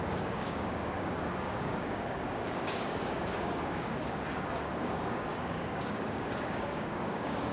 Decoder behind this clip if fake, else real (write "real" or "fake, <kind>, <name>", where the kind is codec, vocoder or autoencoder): fake, codec, DAC